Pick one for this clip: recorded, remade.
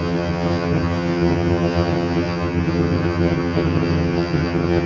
remade